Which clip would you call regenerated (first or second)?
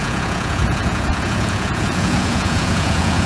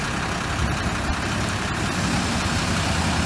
first